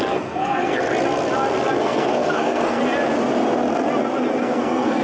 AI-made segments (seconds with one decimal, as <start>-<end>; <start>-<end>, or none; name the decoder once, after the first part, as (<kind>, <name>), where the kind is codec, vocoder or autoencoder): 0.0-0.9 (codec, SNAC); 1.8-2.8; 4.4-5.0